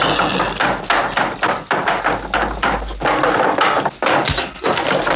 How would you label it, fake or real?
real